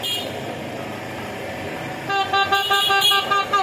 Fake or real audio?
fake